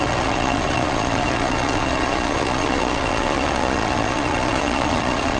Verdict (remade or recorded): remade